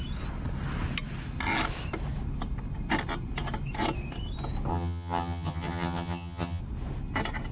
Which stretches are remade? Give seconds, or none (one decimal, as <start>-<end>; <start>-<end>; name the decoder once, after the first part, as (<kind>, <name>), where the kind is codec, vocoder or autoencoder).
4.7-6.6 (vocoder, HiFi-GAN)